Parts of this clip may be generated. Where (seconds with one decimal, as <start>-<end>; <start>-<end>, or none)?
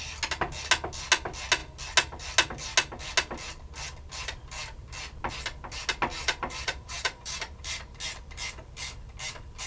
6.1-7.8